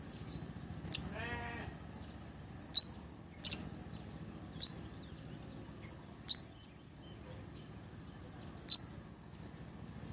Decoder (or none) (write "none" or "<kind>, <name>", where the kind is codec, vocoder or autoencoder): none